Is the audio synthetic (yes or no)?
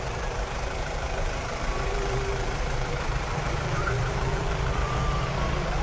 yes